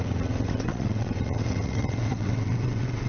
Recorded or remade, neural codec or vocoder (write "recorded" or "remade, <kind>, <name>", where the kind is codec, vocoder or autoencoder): remade, vocoder, WaveNeXt